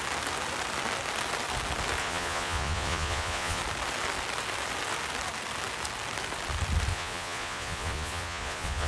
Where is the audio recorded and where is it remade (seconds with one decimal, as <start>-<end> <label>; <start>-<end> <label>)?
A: 0.0-2.0 recorded; 2.0-3.6 remade; 3.6-6.9 recorded; 6.9-8.9 remade